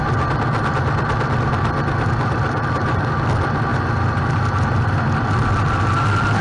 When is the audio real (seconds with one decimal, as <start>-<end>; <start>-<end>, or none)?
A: 0.0-6.4